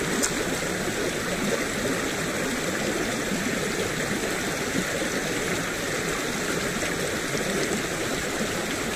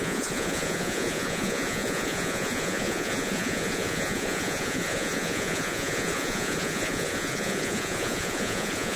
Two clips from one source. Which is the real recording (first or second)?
first